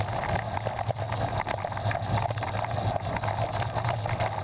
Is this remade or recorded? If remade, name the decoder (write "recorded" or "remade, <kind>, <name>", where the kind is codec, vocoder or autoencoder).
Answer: recorded